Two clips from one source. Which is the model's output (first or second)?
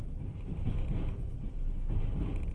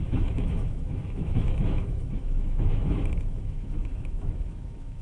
second